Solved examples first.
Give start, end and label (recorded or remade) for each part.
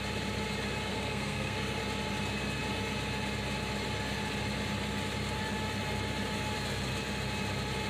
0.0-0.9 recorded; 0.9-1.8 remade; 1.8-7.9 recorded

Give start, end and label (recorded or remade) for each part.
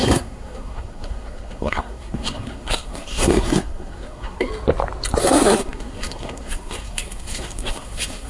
0.0-4.5 remade; 4.5-5.2 recorded; 5.2-8.3 remade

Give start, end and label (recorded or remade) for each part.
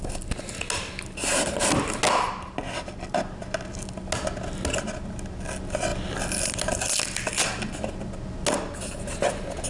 0.0-9.7 recorded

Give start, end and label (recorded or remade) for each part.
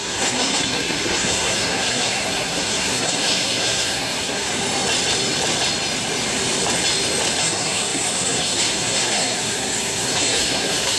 0.0-4.5 remade; 4.5-7.4 recorded; 7.4-11.0 remade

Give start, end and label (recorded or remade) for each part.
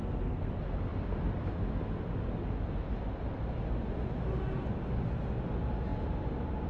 0.0-0.5 remade; 0.5-6.7 recorded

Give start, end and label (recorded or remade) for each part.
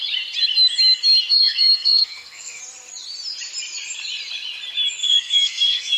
0.0-1.3 recorded; 1.3-2.6 remade; 2.6-5.0 recorded; 5.0-6.0 remade